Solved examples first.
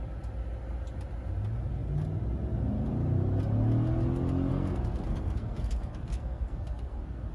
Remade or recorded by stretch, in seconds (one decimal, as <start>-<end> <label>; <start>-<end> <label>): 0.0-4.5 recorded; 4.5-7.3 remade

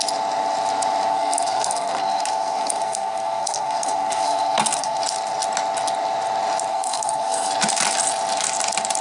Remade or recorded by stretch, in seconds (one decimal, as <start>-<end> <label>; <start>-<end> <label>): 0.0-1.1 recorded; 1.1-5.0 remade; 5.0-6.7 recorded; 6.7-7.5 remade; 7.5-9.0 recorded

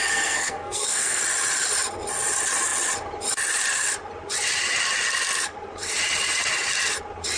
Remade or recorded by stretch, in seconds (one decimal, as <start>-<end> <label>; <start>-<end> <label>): 0.0-1.2 remade; 1.2-7.4 recorded

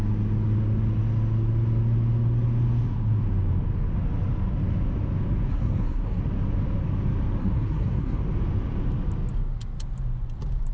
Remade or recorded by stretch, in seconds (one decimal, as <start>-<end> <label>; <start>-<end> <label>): 0.0-5.5 recorded; 5.5-6.2 remade; 6.2-7.4 recorded; 7.4-8.2 remade; 8.2-10.7 recorded

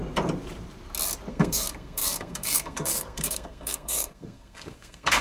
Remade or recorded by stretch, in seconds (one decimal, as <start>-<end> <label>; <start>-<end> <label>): 0.0-1.3 recorded; 1.3-5.2 remade

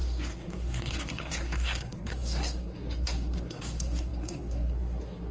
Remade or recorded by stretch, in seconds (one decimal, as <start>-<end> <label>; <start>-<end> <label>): 0.0-5.3 remade

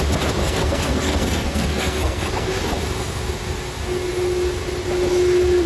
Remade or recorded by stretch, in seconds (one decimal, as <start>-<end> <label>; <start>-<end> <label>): 0.0-0.4 recorded; 0.4-2.5 remade; 2.5-5.7 recorded